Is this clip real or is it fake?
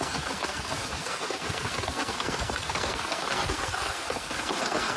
fake